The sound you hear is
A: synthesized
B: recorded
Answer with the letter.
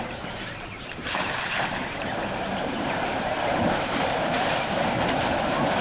A